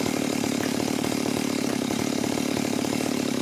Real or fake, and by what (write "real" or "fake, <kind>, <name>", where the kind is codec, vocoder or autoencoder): fake, vocoder, BigVGAN v2